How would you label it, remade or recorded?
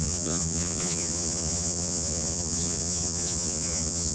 remade